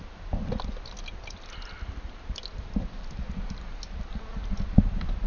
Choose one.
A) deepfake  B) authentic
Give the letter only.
B